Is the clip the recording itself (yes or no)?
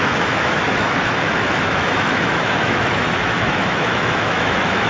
no